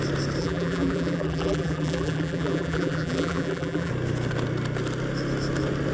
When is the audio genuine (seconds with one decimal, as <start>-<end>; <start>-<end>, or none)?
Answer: 0.0-0.4; 3.9-5.9